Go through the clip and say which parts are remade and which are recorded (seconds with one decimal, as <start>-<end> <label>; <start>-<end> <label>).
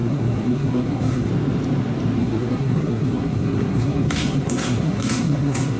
0.0-1.3 remade; 1.3-2.2 recorded; 2.2-5.8 remade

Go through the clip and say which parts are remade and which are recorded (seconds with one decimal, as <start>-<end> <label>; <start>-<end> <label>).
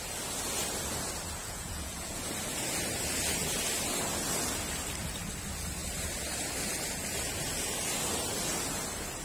0.0-1.4 recorded; 1.4-2.2 remade; 2.2-9.2 recorded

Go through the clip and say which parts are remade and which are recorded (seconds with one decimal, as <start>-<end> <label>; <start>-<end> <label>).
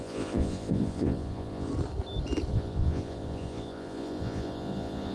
0.0-1.7 remade; 1.7-2.5 recorded; 2.5-5.1 remade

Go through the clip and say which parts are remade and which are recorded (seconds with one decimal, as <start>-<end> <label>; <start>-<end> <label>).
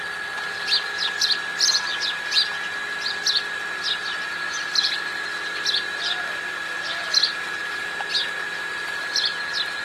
0.0-7.3 remade; 7.3-9.0 recorded; 9.0-9.8 remade